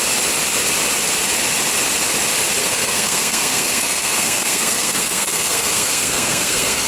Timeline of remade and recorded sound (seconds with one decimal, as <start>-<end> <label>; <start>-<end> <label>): 0.0-2.6 recorded; 2.6-6.9 remade